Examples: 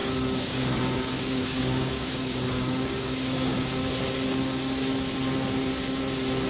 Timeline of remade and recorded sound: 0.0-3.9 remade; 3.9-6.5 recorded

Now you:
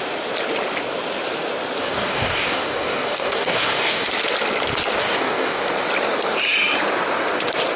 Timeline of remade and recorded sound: 0.0-1.8 recorded; 1.8-4.1 remade; 4.1-5.0 recorded; 5.0-5.6 remade; 5.6-7.8 recorded

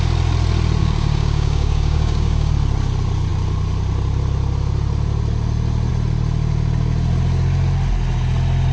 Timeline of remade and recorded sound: 0.0-0.8 recorded; 0.8-2.5 remade; 2.5-8.7 recorded

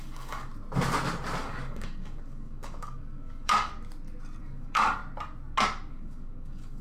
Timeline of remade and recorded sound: 0.0-0.5 remade; 0.5-1.4 recorded; 1.4-3.7 remade; 3.7-4.4 recorded; 4.4-5.0 remade; 5.0-5.9 recorded; 5.9-6.8 remade